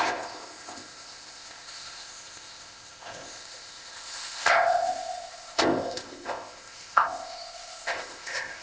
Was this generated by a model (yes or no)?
yes